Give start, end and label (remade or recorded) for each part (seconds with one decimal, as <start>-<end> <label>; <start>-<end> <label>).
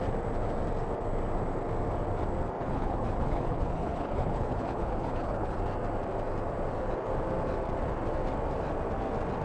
0.0-2.6 recorded; 2.6-5.6 remade; 5.6-9.4 recorded